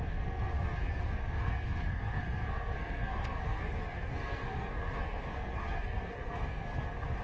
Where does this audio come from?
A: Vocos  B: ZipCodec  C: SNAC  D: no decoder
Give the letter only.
C